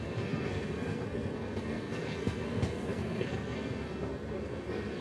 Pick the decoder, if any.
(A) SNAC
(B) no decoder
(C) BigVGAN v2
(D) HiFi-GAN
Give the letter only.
A